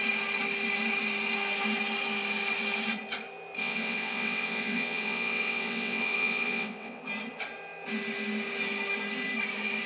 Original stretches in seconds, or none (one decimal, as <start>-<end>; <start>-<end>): 0.0-3.6; 7.0-9.9